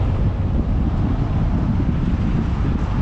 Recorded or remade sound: recorded